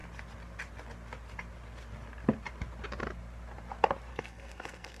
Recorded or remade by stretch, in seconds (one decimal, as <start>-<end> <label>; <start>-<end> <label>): 0.0-4.1 recorded; 4.1-5.0 remade